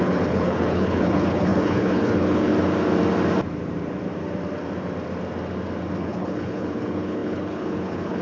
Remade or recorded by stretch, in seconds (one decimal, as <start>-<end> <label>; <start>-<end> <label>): 0.0-2.5 remade; 2.5-6.0 recorded; 6.0-8.2 remade